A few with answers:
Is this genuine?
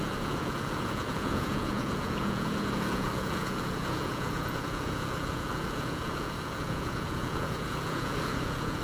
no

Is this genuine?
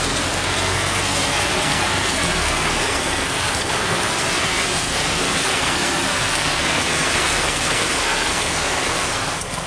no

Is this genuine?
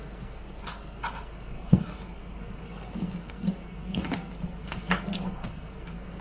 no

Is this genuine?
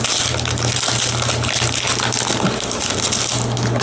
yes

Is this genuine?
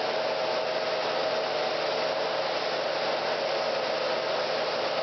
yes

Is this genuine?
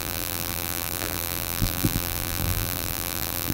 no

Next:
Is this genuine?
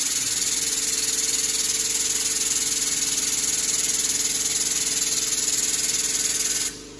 yes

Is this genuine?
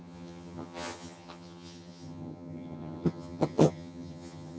no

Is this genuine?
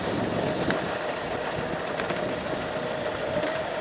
yes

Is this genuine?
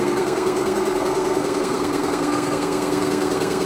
no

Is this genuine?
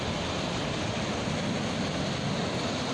yes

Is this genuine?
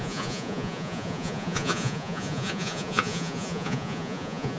no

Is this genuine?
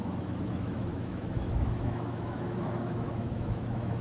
no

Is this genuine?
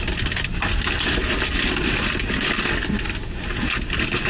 yes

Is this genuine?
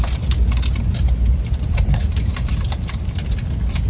yes